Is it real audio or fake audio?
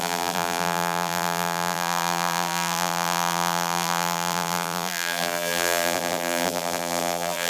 fake